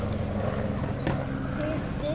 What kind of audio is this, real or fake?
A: real